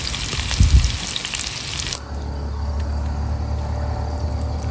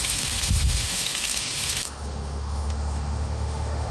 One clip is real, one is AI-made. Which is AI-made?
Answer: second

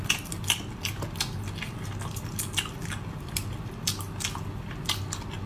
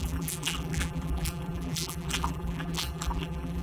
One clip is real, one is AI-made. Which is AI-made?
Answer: second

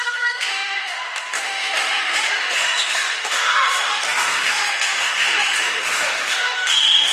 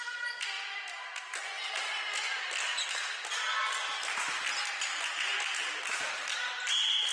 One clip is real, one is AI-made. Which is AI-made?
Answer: first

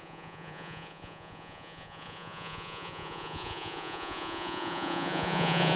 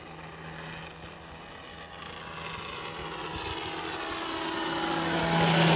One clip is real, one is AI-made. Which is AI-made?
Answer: first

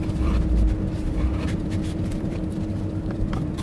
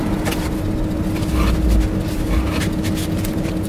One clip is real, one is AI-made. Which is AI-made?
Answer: first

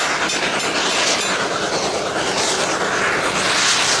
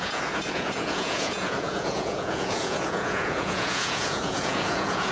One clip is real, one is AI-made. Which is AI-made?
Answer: second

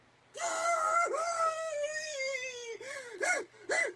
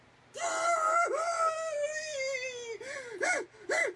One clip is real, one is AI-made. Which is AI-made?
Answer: first